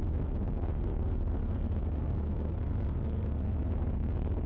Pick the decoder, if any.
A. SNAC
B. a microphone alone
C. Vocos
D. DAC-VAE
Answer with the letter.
A